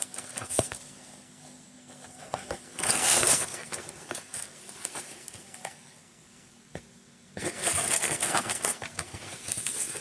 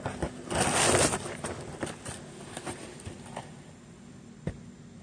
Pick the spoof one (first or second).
first